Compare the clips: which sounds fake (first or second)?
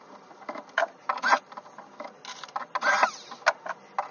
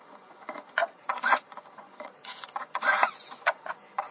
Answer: second